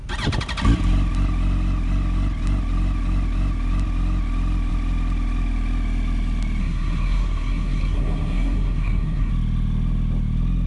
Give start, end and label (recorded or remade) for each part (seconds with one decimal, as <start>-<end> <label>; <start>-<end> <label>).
0.0-6.6 recorded; 6.6-9.3 remade; 9.3-10.7 recorded

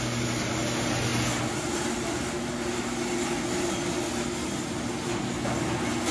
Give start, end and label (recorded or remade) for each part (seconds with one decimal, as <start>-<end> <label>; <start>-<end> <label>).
0.0-6.1 recorded

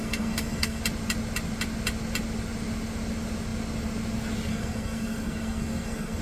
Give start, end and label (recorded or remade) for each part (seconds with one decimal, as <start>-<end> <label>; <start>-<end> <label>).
0.0-0.8 remade; 0.8-4.5 recorded; 4.5-6.2 remade

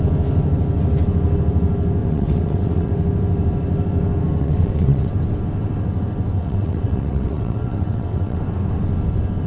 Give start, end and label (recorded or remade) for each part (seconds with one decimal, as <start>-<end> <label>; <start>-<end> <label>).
0.0-2.0 recorded; 2.0-2.9 remade; 2.9-4.4 recorded; 4.4-5.1 remade; 5.1-6.4 recorded; 6.4-8.4 remade; 8.4-9.5 recorded

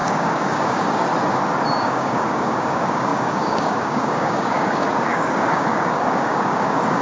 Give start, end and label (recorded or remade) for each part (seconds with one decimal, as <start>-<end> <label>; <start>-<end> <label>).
0.0-1.1 remade; 1.1-1.8 recorded; 1.8-7.0 remade

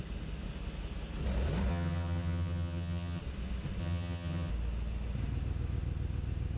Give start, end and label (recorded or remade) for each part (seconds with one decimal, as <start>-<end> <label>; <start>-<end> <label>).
0.0-1.7 recorded; 1.7-3.2 remade; 3.2-3.8 recorded; 3.8-4.5 remade; 4.5-6.6 recorded